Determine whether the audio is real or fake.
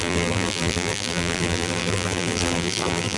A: fake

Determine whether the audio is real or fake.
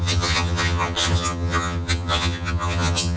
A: fake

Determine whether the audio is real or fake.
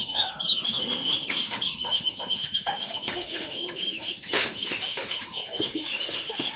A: fake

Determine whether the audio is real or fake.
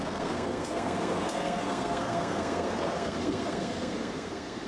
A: fake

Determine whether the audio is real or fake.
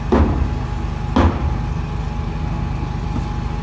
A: real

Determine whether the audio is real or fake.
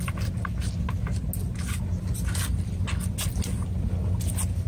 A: real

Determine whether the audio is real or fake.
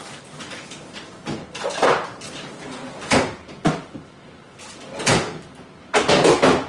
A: real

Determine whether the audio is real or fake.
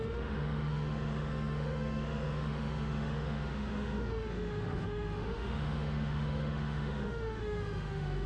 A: fake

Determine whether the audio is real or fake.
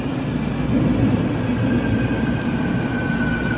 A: real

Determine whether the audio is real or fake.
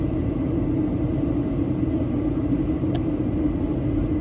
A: real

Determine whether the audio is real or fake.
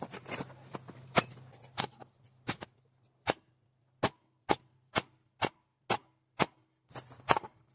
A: real